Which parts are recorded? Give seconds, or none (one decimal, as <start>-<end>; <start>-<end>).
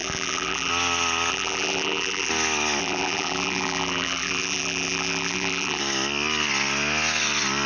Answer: 0.7-1.3; 2.3-2.8; 5.8-7.7